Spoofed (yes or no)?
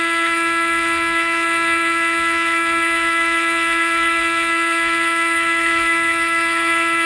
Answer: yes